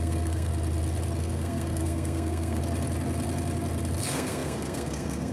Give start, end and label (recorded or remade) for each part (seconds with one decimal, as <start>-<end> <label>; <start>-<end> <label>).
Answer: 0.0-0.5 remade; 0.5-1.2 recorded; 1.2-2.6 remade; 2.6-4.0 recorded; 4.0-5.3 remade